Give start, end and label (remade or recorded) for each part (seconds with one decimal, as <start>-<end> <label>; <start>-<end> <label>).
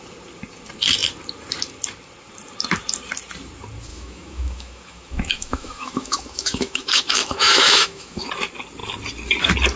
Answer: 0.0-3.9 recorded; 3.9-8.3 remade; 8.3-9.8 recorded